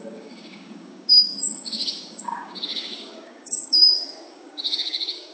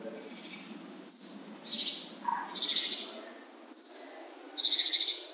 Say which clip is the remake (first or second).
first